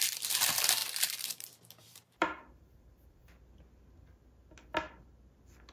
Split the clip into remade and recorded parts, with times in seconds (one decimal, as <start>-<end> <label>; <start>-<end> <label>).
0.0-3.2 remade; 3.2-5.7 recorded